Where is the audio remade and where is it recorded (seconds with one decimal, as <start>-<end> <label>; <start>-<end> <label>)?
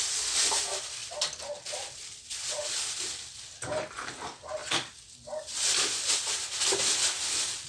0.0-1.0 recorded; 1.0-2.2 remade; 2.2-4.6 recorded; 4.6-5.4 remade; 5.4-7.7 recorded